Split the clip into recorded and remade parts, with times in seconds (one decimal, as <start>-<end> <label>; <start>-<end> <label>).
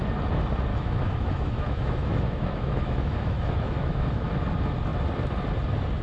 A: 0.0-0.7 recorded; 0.7-4.3 remade; 4.3-6.0 recorded